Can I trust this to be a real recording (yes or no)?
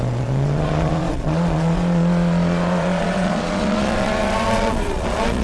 no